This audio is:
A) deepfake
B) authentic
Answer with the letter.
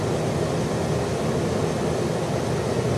B